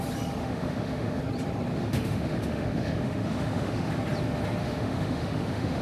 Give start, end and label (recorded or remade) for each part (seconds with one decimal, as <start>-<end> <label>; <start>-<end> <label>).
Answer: 0.0-0.4 recorded; 0.4-1.2 remade; 1.2-1.7 recorded; 1.7-3.9 remade; 3.9-4.6 recorded; 4.6-5.8 remade